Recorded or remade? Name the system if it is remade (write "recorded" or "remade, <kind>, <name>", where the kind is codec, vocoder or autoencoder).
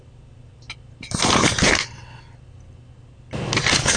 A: recorded